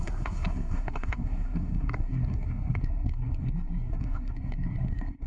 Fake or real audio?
fake